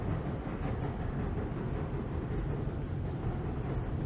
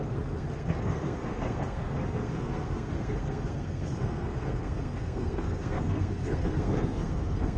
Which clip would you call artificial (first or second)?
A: second